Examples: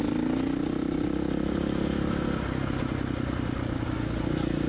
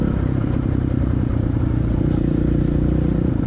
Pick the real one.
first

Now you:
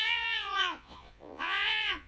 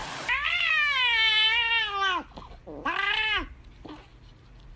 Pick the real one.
second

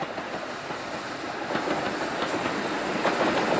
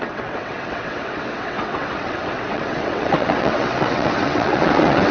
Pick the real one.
first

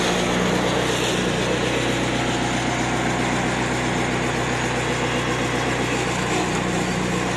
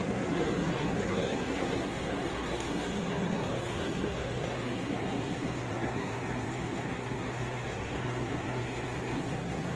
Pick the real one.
first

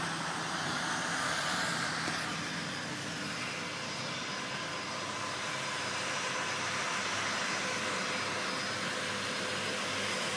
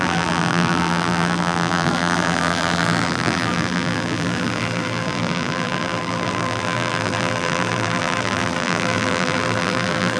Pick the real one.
first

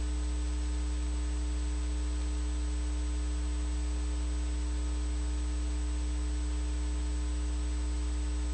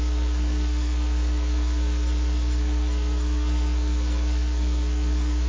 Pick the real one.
first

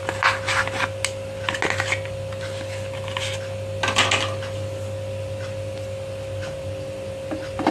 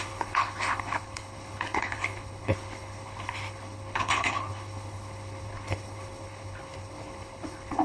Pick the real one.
first